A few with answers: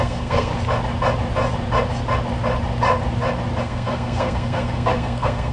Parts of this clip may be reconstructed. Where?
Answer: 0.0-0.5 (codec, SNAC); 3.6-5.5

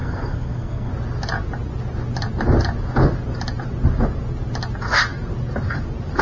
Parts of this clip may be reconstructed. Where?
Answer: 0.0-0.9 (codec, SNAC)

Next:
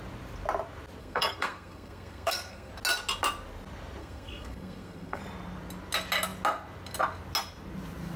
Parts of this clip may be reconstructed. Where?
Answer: 1.0-2.7 (codec, SNAC); 4.0-5.2

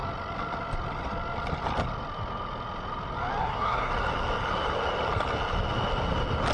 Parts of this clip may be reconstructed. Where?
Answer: 3.4-3.9 (codec, SNAC)

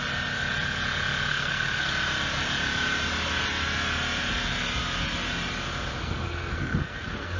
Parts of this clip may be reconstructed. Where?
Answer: 1.3-1.9 (codec, SNAC); 6.0-7.4